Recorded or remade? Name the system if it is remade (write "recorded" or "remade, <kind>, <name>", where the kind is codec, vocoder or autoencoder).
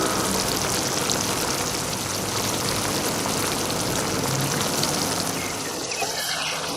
recorded